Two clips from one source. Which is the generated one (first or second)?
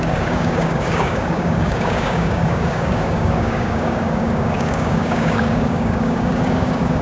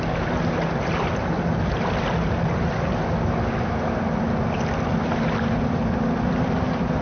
first